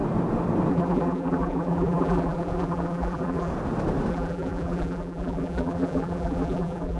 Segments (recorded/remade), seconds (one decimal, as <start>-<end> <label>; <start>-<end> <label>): 0.0-0.7 recorded; 0.7-3.5 remade; 3.5-4.1 recorded; 4.1-7.0 remade